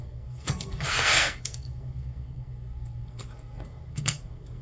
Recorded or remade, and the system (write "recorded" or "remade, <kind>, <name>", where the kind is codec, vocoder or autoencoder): remade, codec, SNAC